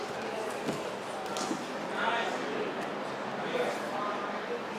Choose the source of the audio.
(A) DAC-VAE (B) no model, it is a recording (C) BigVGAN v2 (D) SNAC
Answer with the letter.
B